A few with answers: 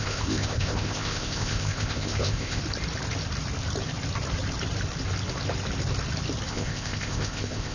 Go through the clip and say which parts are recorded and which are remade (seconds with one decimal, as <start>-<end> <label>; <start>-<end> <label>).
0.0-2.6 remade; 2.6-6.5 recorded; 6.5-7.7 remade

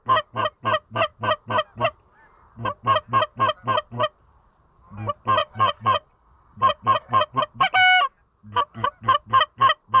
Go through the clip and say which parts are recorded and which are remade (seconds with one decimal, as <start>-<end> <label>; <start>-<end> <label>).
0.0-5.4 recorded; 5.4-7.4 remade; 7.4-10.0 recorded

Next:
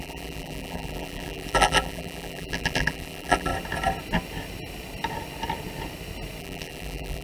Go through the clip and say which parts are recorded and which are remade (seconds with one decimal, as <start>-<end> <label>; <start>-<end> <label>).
0.0-3.5 remade; 3.5-6.4 recorded; 6.4-7.2 remade

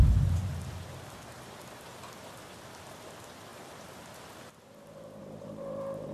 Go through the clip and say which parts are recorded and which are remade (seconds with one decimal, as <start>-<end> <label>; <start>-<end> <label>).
0.0-3.5 recorded; 3.5-4.0 remade; 4.0-5.2 recorded; 5.2-6.1 remade